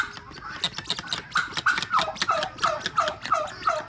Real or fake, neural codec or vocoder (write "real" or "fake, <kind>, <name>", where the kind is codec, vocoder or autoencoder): real